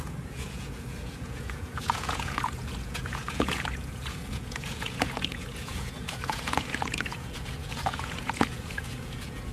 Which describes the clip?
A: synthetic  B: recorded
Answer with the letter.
A